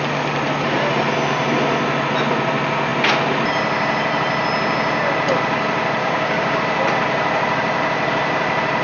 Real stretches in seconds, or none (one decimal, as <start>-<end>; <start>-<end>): 0.0-6.0; 6.6-8.8